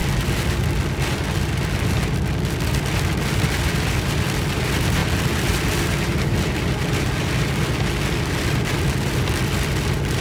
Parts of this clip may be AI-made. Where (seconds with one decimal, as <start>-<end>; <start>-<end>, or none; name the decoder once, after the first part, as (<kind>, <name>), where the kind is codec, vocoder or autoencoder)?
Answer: none